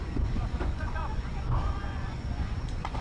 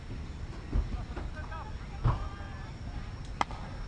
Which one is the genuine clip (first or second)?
second